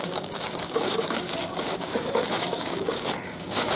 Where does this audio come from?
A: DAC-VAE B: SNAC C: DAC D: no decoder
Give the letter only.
C